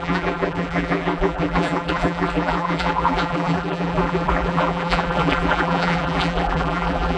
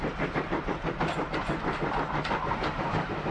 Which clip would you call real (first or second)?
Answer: second